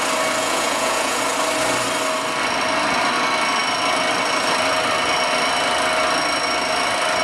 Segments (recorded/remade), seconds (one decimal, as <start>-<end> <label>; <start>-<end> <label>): 0.0-0.4 recorded; 0.4-1.2 remade; 1.2-7.2 recorded